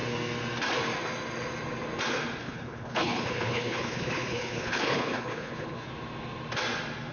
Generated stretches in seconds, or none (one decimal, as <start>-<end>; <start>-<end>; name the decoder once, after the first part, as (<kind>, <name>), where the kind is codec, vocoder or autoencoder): 2.4-5.9 (codec, HILCodec)